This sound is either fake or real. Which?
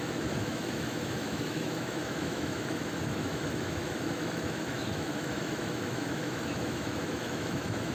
fake